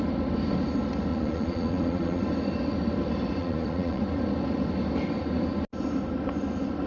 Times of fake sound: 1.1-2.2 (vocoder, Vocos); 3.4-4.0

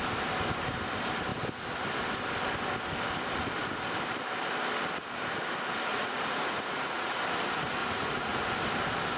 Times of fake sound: 5.9-7.2 (vocoder, Vocos); 7.8-8.4

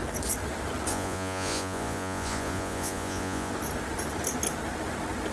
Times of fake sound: 0.9-3.5 (vocoder, Vocos)

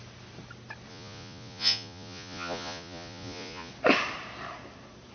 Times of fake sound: 0.9-3.7 (vocoder, Vocos)

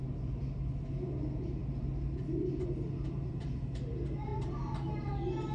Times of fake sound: none

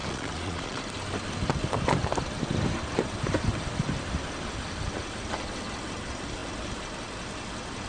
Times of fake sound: 0.0-0.8 (vocoder, Vocos)

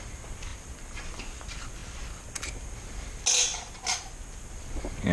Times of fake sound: none

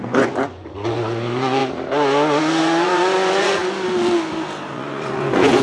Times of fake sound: 0.0-1.6 (vocoder, Vocos); 2.4-3.6; 4.7-5.6